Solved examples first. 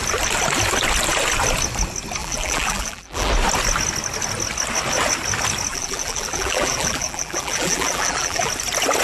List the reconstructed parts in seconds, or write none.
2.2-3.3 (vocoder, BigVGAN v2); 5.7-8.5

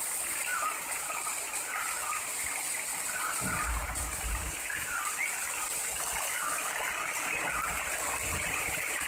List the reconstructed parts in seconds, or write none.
none

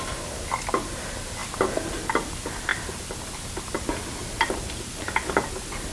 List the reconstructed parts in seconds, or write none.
1.4-2.1 (vocoder, BigVGAN v2)

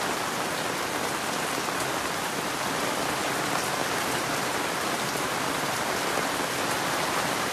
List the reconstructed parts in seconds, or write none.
3.8-4.6 (vocoder, BigVGAN v2)

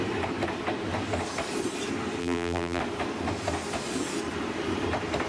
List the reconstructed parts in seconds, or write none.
2.2-2.8 (vocoder, BigVGAN v2)

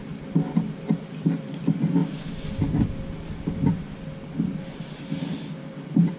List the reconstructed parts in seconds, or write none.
1.0-2.0 (vocoder, BigVGAN v2); 5.2-6.2

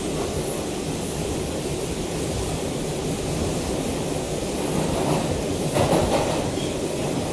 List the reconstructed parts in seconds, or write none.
1.7-2.7 (vocoder, BigVGAN v2); 3.5-4.2

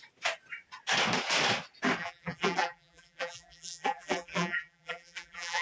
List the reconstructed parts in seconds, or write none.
2.0-5.6 (vocoder, BigVGAN v2)